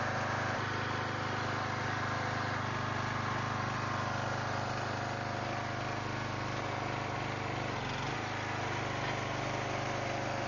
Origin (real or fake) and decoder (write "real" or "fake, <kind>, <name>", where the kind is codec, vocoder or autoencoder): real